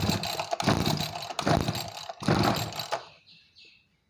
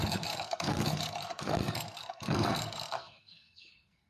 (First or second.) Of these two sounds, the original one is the first